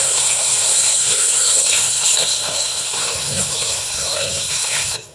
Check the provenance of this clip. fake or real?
fake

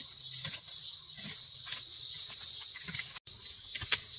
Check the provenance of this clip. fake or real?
real